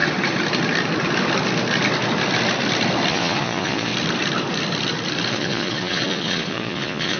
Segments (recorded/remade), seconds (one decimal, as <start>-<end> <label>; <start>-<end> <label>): 0.0-3.1 recorded; 3.1-3.9 remade; 3.9-5.3 recorded; 5.3-7.2 remade

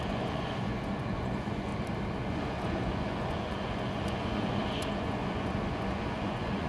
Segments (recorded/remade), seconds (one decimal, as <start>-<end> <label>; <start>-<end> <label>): 0.0-1.7 remade; 1.7-2.2 recorded; 2.2-6.7 remade

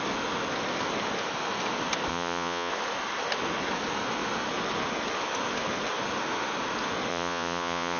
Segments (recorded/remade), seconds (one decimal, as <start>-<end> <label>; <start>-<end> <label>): 0.0-2.1 recorded; 2.1-2.7 remade; 2.7-7.1 recorded; 7.1-8.0 remade

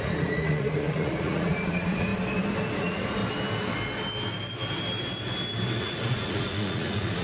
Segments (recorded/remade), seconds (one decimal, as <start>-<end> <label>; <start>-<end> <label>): 0.0-2.1 remade; 2.1-2.8 recorded; 2.8-3.2 remade; 3.2-5.8 recorded; 5.8-7.2 remade

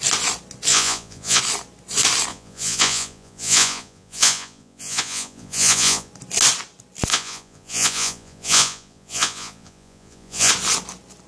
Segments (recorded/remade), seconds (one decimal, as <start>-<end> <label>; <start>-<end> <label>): 0.0-0.7 recorded; 0.7-1.4 remade; 1.4-2.3 recorded; 2.3-6.1 remade; 6.1-7.1 recorded; 7.1-10.5 remade; 10.5-11.3 recorded

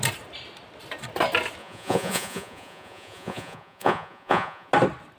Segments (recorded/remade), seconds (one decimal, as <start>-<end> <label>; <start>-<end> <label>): 0.0-1.6 recorded; 1.6-4.7 remade; 4.7-5.2 recorded

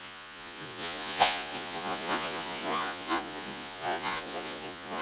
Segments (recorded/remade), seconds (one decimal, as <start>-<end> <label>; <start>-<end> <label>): 0.0-5.0 remade